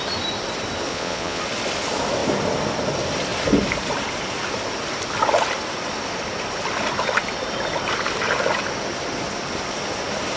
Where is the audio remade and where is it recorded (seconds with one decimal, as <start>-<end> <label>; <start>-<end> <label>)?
0.0-0.9 recorded; 0.9-1.4 remade; 1.4-10.4 recorded